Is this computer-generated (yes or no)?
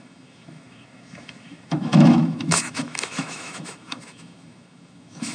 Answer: yes